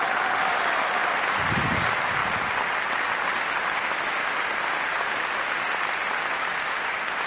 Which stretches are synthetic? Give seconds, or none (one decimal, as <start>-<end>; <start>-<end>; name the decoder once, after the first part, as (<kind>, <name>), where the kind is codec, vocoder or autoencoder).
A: none